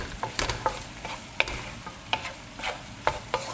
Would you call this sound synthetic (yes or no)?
yes